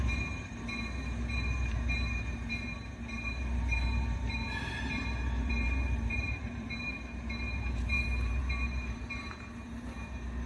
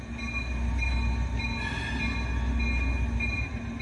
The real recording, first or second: second